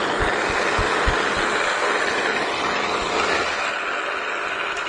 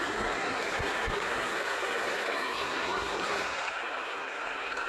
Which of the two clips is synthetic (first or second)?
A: second